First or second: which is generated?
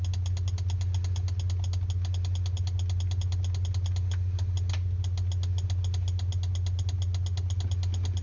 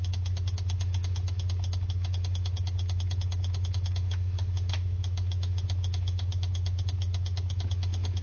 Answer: second